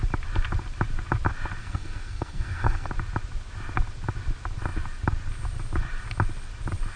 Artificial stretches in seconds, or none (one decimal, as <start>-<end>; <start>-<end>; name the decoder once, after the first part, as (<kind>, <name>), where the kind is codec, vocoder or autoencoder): 1.6-2.9 (codec, SNAC)

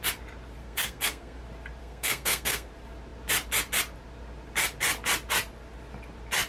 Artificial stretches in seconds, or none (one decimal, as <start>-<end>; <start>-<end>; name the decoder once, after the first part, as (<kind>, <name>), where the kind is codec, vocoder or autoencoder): 0.6-1.4 (codec, SNAC); 1.8-2.7

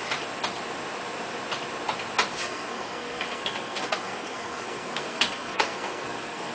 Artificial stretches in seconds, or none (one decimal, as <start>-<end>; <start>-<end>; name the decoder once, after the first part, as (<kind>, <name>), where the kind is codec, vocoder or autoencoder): 2.3-6.5 (codec, SNAC)

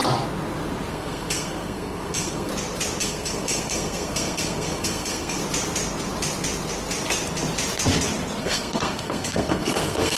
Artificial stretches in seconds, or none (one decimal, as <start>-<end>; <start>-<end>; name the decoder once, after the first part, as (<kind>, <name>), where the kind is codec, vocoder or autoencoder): 0.9-2.5 (codec, SNAC); 3.0-5.4; 8.4-10.2